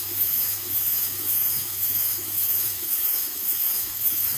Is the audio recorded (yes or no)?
no